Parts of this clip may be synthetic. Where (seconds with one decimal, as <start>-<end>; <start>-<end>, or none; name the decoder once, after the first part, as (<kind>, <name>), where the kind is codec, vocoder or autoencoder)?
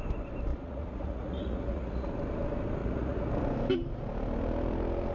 0.5-2.1 (vocoder, Vocos); 2.8-3.3